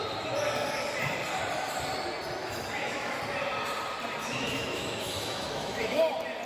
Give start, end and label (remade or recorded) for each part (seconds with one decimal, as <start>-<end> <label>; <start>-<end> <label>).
0.0-2.4 recorded; 2.4-3.2 remade; 3.2-4.2 recorded; 4.2-6.0 remade; 6.0-6.5 recorded